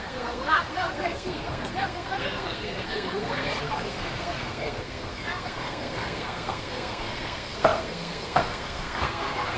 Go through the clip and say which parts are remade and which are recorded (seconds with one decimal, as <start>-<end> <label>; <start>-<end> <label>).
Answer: 0.0-9.6 remade